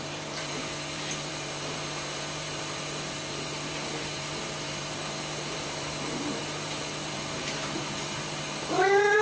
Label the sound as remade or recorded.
remade